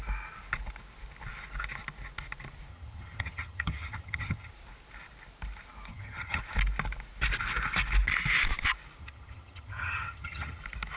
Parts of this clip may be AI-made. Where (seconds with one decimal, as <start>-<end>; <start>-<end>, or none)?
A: 2.7-4.5; 5.9-6.4; 9.0-10.6